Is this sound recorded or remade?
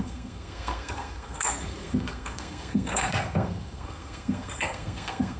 remade